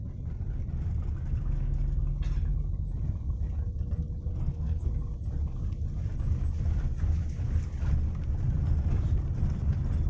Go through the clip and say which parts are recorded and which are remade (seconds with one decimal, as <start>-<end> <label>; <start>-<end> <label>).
0.0-4.4 recorded; 4.4-4.9 remade; 4.9-10.1 recorded